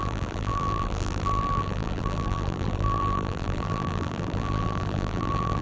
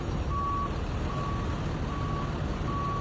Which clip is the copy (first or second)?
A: first